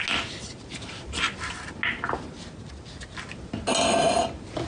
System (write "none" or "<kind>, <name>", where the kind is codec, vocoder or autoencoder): none